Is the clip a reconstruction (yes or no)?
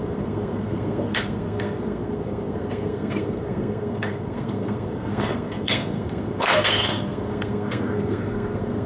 yes